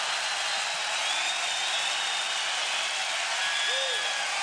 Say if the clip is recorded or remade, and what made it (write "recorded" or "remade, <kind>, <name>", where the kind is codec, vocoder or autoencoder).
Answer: recorded